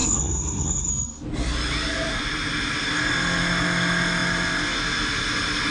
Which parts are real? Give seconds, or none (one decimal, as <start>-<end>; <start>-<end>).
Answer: 0.9-5.7